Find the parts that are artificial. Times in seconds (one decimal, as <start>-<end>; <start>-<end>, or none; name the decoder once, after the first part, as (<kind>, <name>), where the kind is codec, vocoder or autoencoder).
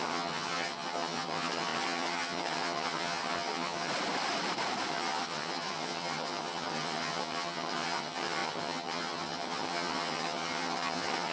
0.0-3.9 (vocoder, HiFi-GAN); 4.9-11.3